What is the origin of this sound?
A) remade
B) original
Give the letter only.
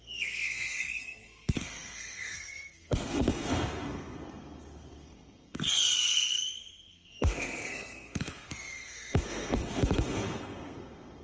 A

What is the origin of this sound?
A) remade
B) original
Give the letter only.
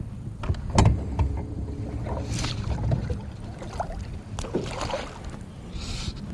B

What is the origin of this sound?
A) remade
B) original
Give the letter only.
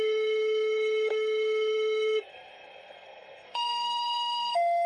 A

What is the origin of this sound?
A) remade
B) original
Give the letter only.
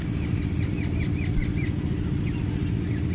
B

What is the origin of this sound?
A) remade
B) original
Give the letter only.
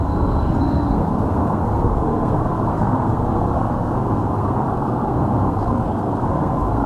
A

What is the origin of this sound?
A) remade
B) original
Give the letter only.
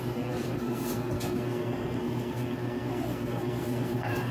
A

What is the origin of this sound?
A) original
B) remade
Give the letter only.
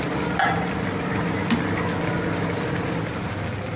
A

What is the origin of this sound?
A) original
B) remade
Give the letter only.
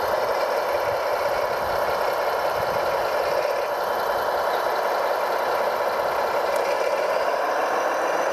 A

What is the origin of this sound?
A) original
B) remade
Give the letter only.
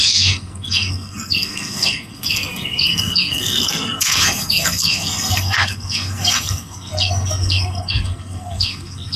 B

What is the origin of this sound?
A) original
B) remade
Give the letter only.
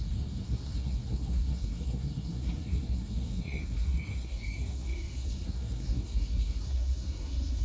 B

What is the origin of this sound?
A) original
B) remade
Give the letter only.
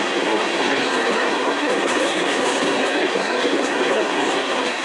B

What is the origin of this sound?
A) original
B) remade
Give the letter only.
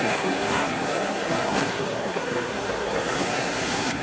B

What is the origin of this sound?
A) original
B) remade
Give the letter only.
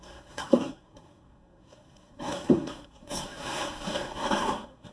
B